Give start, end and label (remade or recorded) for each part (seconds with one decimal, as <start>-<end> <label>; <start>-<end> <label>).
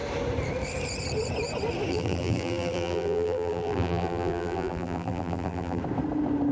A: 0.0-1.9 recorded; 1.9-5.8 remade; 5.8-6.5 recorded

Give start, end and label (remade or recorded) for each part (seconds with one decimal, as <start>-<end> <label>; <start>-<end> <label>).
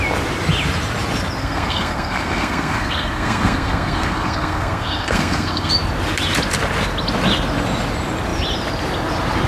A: 0.0-1.4 recorded; 1.4-5.7 remade; 5.7-9.5 recorded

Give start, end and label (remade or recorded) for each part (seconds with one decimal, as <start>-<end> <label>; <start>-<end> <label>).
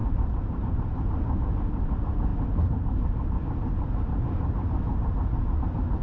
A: 0.0-6.0 remade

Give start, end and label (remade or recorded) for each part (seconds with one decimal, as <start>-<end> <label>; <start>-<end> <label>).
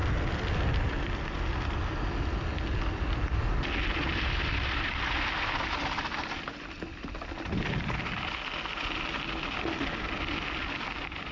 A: 0.0-11.3 recorded